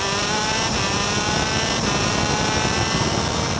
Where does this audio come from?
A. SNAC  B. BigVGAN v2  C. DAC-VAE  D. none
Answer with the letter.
D